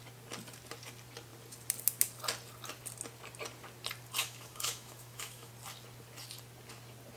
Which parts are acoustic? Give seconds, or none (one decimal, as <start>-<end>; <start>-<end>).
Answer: 0.0-4.2; 5.5-7.2